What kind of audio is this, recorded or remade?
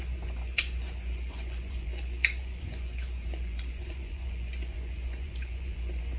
remade